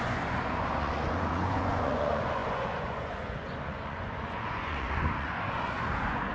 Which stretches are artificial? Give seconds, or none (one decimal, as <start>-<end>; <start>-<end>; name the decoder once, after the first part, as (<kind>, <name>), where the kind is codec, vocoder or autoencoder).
0.0-6.3 (vocoder, Vocos)